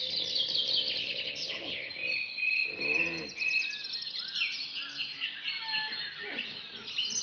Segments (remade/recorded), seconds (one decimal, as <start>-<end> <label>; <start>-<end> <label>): 0.0-1.0 recorded; 1.0-1.9 remade; 1.9-7.2 recorded